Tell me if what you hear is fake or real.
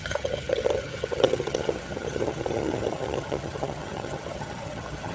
fake